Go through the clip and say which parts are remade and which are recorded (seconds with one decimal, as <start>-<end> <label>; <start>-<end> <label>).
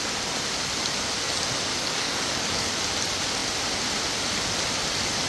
0.0-1.7 recorded; 1.7-2.8 remade; 2.8-5.3 recorded